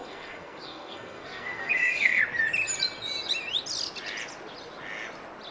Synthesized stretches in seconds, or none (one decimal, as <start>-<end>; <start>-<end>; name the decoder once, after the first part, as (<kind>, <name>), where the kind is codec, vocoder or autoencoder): 0.0-2.2 (codec, SNAC)